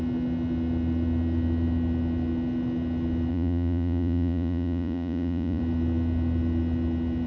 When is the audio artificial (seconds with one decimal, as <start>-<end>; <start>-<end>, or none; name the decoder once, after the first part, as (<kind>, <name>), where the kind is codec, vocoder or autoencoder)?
3.3-5.6 (vocoder, Vocos)

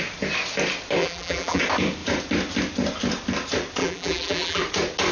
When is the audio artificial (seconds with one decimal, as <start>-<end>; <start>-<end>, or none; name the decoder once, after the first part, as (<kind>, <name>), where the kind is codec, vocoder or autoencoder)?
1.0-1.6 (vocoder, BigVGAN v2); 3.8-4.6

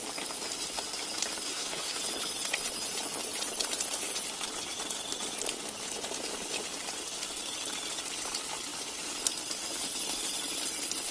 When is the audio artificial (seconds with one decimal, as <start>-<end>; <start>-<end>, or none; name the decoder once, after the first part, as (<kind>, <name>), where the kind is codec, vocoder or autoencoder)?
1.5-2.0 (codec, SNAC)

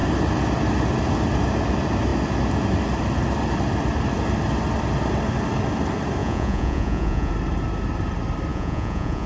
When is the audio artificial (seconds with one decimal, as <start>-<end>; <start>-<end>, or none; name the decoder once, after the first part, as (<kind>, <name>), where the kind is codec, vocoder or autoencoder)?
6.2-7.3 (vocoder, Vocos); 8.5-9.3

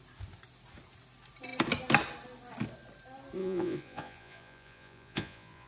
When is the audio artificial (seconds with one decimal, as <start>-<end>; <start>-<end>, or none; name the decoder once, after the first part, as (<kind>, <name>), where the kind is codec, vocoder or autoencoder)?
3.4-5.7 (vocoder, Vocos)

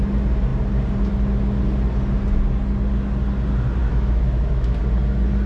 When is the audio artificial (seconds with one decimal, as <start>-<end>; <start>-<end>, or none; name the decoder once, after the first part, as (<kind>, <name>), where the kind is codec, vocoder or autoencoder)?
3.8-4.8 (autoencoder, DAC-VAE)